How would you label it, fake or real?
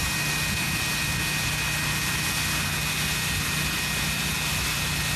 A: real